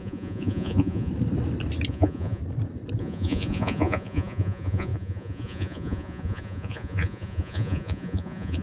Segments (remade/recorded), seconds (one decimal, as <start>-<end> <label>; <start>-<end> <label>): 0.0-1.1 remade; 1.1-1.9 recorded; 1.9-2.4 remade; 2.4-3.0 recorded; 3.0-8.6 remade